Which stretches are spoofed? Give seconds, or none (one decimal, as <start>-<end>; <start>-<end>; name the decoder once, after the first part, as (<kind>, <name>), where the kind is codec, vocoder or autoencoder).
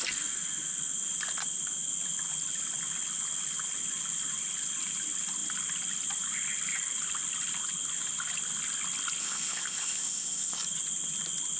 9.2-10.6 (codec, ZipCodec)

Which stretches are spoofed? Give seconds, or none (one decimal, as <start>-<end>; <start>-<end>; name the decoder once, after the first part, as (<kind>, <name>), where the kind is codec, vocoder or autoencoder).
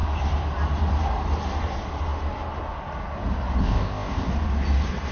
3.6-4.3 (codec, ZipCodec)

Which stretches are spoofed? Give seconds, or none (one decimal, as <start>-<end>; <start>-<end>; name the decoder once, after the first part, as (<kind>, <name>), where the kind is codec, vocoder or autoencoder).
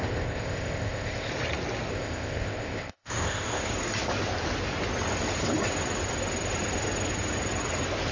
0.0-1.3 (codec, ZipCodec); 1.9-3.6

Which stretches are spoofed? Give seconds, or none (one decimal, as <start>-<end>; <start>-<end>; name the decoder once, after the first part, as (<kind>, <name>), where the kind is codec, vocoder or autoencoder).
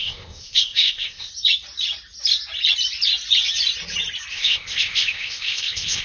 0.0-1.3 (codec, ZipCodec); 4.3-6.0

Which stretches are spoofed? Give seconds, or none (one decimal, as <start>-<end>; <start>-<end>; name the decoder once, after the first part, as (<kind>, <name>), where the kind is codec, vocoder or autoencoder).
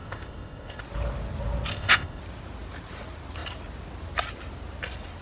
0.0-0.8 (codec, ZipCodec); 1.7-2.2